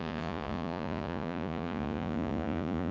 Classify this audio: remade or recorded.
remade